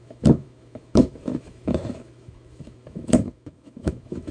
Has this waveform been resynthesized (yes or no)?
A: yes